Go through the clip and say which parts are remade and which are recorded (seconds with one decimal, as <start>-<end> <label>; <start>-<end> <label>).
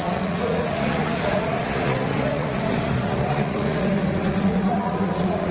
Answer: 0.0-5.5 remade